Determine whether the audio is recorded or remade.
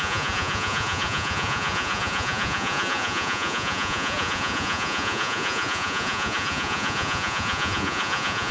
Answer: remade